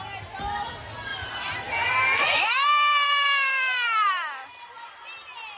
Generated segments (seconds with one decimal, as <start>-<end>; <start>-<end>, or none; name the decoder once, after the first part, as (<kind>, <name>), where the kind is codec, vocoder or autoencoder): 1.1-4.5 (vocoder, BigVGAN v2)